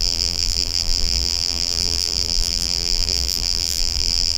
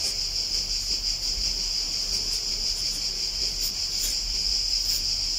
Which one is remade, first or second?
first